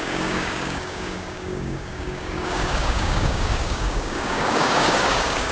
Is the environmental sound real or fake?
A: fake